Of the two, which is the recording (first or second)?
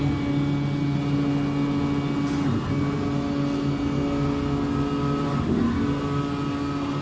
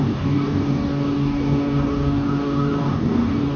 first